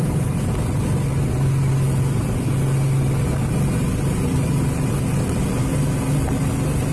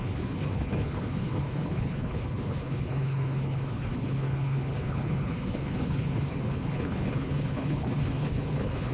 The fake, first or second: second